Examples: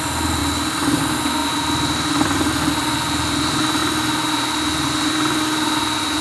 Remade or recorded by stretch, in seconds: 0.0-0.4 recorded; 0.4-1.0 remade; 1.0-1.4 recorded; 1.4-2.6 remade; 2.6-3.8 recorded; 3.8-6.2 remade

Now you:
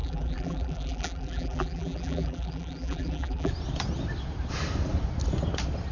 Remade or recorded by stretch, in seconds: 0.0-3.5 remade; 3.5-5.9 recorded

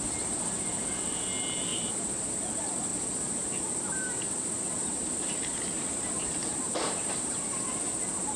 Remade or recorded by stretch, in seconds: 0.0-1.7 recorded; 1.7-2.4 remade; 2.4-2.9 recorded; 2.9-7.6 remade; 7.6-8.4 recorded

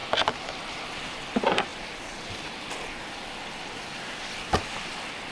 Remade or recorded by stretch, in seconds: 0.0-1.7 recorded; 1.7-4.6 remade; 4.6-5.3 recorded